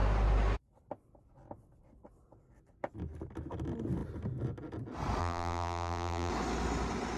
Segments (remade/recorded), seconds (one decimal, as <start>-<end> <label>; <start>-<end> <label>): 0.0-5.2 recorded; 5.2-6.3 remade; 6.3-7.2 recorded